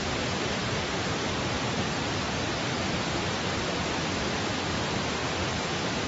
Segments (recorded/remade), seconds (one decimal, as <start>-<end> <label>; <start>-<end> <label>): 0.0-6.1 recorded